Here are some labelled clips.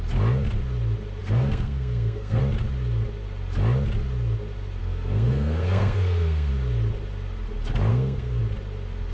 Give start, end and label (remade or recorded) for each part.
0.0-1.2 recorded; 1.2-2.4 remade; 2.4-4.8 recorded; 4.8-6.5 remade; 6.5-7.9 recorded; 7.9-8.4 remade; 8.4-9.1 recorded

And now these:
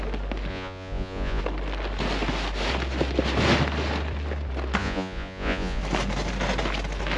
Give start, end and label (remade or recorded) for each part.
0.0-0.5 recorded; 0.5-1.4 remade; 1.4-4.8 recorded; 4.8-5.8 remade; 5.8-7.2 recorded

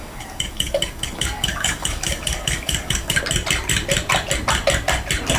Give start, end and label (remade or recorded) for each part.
0.0-3.2 remade; 3.2-5.4 recorded